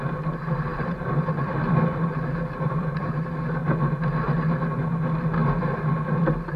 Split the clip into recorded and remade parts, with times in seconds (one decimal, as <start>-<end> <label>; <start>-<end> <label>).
0.0-0.7 recorded; 0.7-3.1 remade; 3.1-5.4 recorded; 5.4-6.6 remade